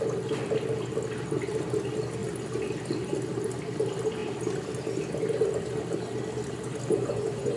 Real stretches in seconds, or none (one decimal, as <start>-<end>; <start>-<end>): 0.0-6.9